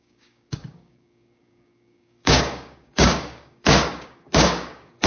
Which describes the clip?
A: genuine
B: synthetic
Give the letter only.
B